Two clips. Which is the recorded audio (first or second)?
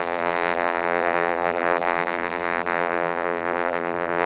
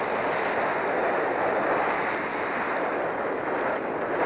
second